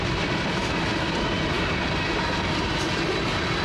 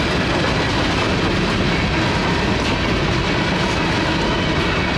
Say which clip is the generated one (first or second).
first